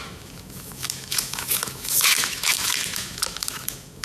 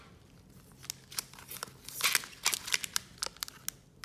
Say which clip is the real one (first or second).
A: second